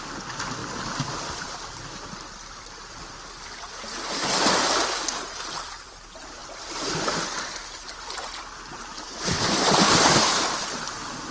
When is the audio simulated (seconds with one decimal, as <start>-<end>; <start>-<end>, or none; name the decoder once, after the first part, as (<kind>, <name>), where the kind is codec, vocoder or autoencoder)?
none

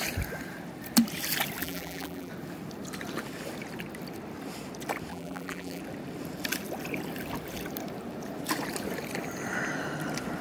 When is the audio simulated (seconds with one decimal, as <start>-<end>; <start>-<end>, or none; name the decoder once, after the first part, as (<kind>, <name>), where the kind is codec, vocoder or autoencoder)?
1.6-2.3 (vocoder, BigVGAN v2); 5.1-5.8

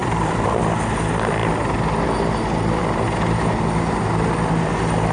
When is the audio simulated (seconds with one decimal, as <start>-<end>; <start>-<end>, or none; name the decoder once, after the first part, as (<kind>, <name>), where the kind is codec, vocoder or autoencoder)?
0.0-0.6 (vocoder, BigVGAN v2)

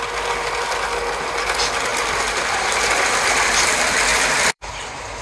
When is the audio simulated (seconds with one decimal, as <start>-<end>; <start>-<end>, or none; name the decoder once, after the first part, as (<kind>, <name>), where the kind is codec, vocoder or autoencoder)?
1.9-3.6 (vocoder, BigVGAN v2); 4.1-4.7